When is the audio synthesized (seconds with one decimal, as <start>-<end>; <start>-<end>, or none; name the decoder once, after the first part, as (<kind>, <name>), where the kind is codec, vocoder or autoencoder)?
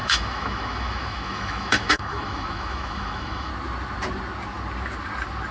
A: 0.0-3.5 (autoencoder, DAC-VAE)